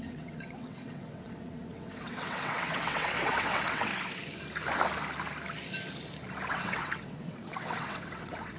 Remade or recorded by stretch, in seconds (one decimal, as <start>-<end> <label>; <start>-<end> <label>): 0.0-3.9 remade; 3.9-6.5 recorded; 6.5-8.6 remade